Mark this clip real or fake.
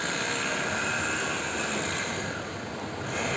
real